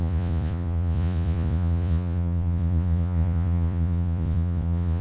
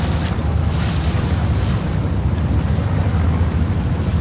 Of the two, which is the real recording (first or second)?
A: second